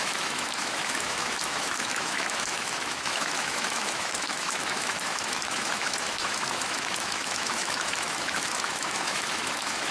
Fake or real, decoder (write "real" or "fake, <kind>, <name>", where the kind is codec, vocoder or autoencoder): fake, autoencoder, DAC-VAE